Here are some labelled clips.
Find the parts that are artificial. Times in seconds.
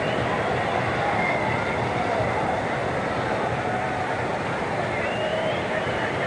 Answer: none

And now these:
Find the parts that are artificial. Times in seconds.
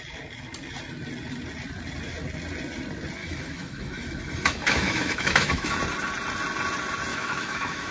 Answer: 3.2-5.8 (autoencoder, DAC-VAE); 7.1-7.9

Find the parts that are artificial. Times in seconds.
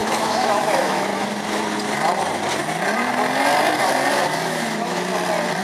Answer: 0.0-1.1 (autoencoder, DAC-VAE); 4.5-5.1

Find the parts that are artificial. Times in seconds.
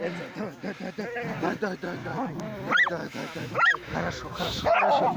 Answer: 3.0-4.7 (autoencoder, DAC-VAE)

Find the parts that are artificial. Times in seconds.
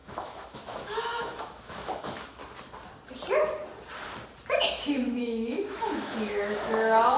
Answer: 0.0-2.4 (autoencoder, DAC-VAE); 4.8-7.2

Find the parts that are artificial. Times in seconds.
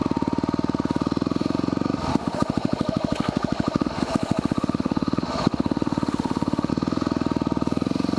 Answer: 2.1-6.7 (autoencoder, DAC-VAE)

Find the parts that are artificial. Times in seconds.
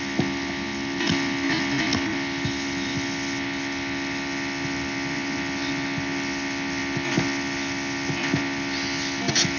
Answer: none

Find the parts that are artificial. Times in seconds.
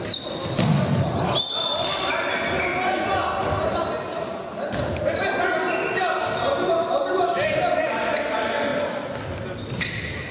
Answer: none